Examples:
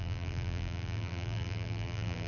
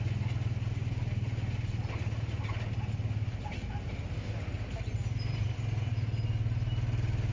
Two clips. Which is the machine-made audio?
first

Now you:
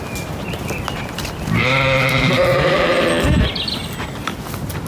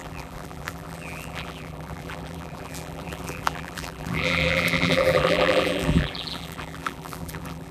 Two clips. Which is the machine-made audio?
second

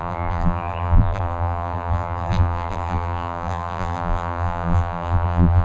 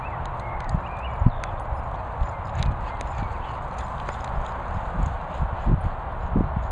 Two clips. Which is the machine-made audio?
first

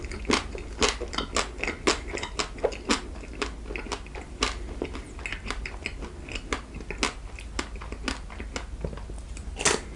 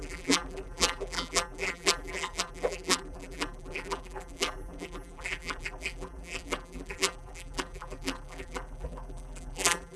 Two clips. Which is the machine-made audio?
second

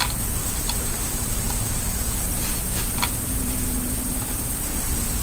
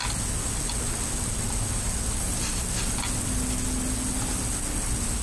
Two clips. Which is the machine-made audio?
first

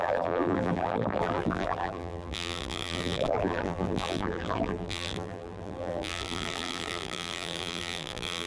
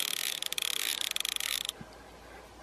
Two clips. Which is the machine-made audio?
first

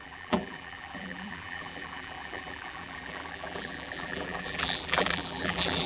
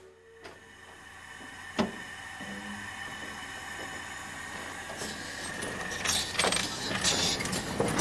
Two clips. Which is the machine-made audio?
first